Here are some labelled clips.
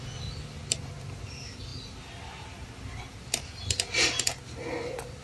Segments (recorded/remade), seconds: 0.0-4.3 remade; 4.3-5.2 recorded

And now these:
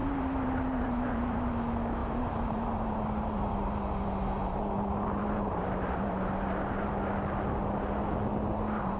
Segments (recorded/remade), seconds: 0.0-1.5 remade; 1.5-2.0 recorded; 2.0-6.9 remade; 6.9-9.0 recorded